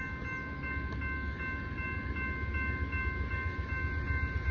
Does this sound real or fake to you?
real